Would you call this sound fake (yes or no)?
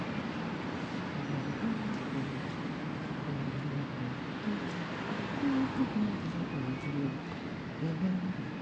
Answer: no